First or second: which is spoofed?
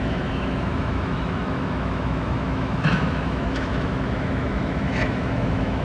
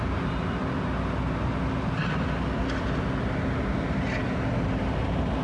first